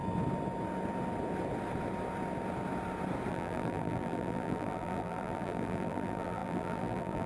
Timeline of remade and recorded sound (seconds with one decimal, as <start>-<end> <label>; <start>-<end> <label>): 0.0-3.3 recorded; 3.3-7.3 remade